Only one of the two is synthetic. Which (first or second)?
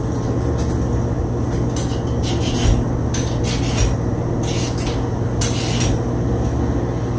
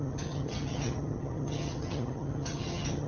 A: second